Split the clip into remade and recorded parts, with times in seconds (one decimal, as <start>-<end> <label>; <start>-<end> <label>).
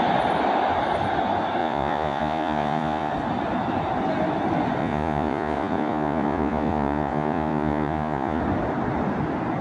0.0-1.6 recorded; 1.6-3.1 remade; 3.1-4.8 recorded; 4.8-8.4 remade; 8.4-9.6 recorded